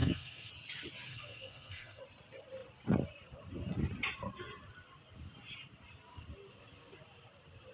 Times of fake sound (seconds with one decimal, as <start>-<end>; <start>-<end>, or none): 0.0-0.5; 1.1-2.0

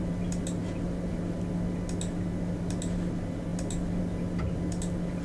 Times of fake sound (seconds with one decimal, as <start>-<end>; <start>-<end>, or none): none

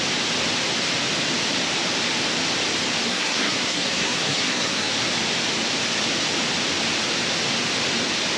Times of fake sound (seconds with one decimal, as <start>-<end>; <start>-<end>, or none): 3.1-4.9

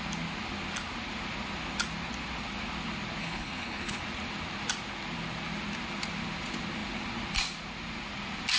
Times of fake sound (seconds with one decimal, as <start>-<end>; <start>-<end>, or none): 3.2-4.0

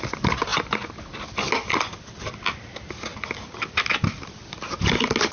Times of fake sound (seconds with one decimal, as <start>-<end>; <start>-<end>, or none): none

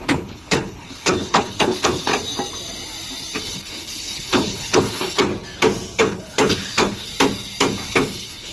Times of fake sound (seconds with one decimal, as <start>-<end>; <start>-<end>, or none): 0.0-2.1; 3.4-5.3; 6.0-7.1; 7.9-8.5

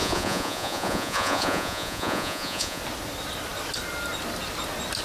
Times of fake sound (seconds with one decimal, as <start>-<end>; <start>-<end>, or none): 0.0-2.8

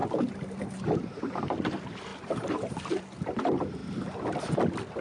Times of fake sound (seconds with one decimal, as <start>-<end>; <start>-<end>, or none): 0.0-1.2; 2.1-3.0